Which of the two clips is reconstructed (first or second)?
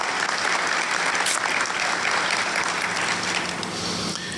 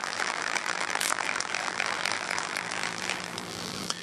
second